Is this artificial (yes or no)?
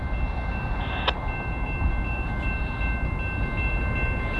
no